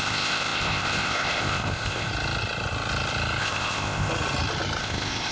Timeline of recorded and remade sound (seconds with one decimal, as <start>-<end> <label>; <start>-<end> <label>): 0.0-2.1 remade; 2.1-3.4 recorded; 3.4-4.1 remade; 4.1-4.8 recorded; 4.8-5.3 remade